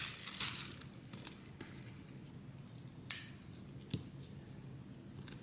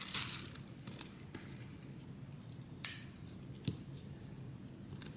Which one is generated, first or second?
second